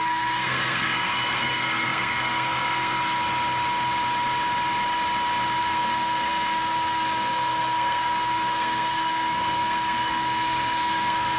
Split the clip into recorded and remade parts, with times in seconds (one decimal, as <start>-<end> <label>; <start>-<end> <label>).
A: 0.0-3.0 remade; 3.0-5.6 recorded; 5.6-11.4 remade